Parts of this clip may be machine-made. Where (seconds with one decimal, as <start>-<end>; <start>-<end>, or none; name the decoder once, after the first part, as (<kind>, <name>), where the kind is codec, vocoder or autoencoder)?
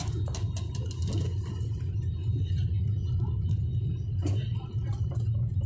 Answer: none